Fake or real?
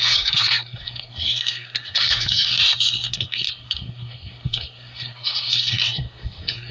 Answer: fake